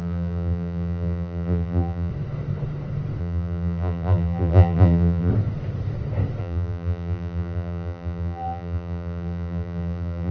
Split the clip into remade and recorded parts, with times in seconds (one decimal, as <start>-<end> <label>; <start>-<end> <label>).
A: 0.0-2.1 remade; 2.1-3.2 recorded; 3.2-5.3 remade; 5.3-6.4 recorded; 6.4-10.3 remade